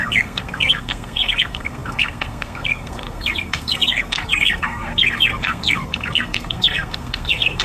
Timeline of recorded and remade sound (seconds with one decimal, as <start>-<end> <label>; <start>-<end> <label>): 0.0-7.6 remade